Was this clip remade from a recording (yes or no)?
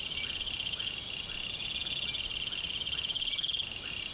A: no